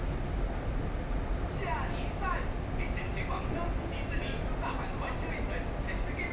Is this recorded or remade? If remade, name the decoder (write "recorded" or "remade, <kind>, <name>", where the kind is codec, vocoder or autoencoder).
recorded